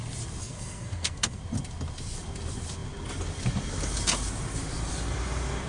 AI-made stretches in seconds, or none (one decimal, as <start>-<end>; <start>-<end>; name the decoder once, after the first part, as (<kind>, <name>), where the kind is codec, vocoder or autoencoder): 0.4-1.4 (codec, SNAC)